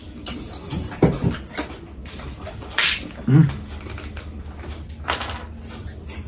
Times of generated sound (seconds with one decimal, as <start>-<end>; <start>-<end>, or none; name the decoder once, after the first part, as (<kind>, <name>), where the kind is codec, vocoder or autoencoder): none